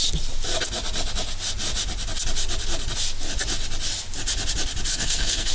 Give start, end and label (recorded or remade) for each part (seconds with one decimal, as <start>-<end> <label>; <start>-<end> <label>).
0.0-4.9 recorded; 4.9-5.5 remade